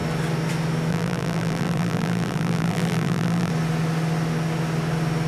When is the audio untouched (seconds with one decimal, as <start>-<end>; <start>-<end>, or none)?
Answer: 0.0-0.9; 3.5-5.3